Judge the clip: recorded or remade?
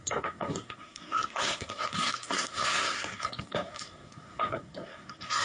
remade